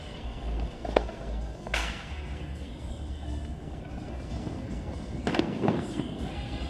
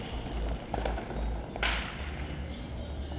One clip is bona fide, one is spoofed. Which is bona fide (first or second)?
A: second